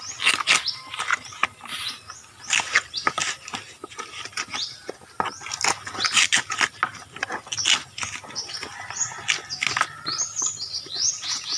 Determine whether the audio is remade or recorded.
recorded